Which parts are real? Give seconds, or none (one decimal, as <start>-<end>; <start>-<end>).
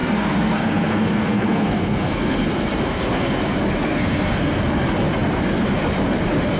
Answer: 3.4-3.9; 4.5-6.6